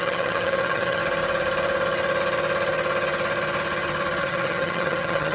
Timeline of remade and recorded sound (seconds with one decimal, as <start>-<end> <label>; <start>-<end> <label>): 0.0-1.0 remade; 1.0-4.2 recorded; 4.2-5.3 remade